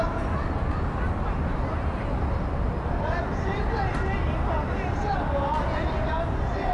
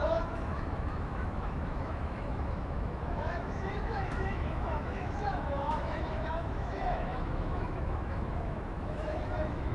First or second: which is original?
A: first